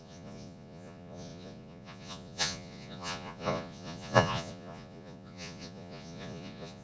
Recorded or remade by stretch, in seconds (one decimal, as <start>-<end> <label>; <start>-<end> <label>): 0.0-6.8 remade

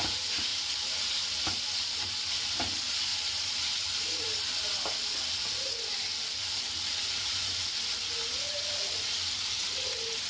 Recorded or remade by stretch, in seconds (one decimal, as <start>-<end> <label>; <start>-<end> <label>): 0.0-10.3 recorded

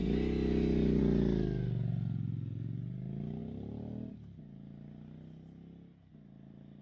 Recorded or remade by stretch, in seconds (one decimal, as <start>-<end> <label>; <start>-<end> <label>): 0.0-6.8 recorded

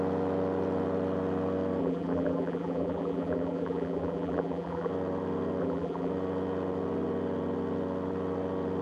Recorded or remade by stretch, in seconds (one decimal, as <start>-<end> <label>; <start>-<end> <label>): 0.0-1.8 recorded; 1.8-4.9 remade; 4.9-5.6 recorded; 5.6-6.1 remade; 6.1-8.8 recorded